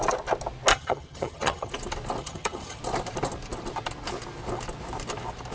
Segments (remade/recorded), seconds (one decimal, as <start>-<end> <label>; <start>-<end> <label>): 0.0-0.7 recorded; 0.7-1.7 remade; 1.7-2.2 recorded; 2.2-2.8 remade; 2.8-5.5 recorded